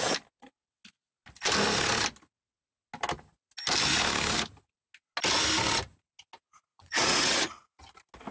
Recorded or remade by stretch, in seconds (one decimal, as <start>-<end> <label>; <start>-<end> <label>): 0.0-6.7 recorded; 6.7-7.8 remade; 7.8-8.3 recorded